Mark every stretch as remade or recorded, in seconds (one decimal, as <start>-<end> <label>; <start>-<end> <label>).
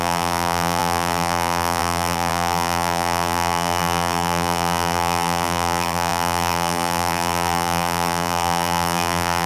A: 0.0-9.5 remade